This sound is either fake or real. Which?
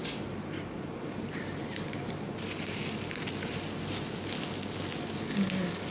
real